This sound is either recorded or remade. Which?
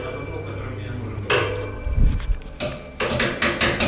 recorded